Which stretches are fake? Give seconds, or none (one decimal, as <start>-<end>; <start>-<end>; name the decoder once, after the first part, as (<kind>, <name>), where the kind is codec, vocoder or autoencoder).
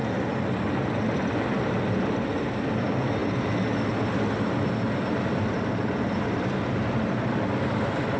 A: none